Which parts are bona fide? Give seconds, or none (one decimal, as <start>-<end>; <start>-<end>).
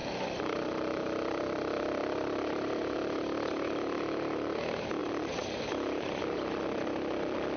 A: 4.6-5.0; 6.2-7.6